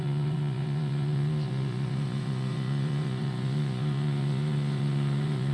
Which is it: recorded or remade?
remade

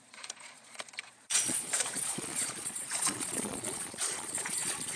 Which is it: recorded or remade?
remade